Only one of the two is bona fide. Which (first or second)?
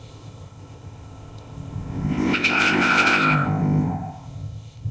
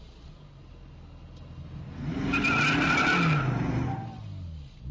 second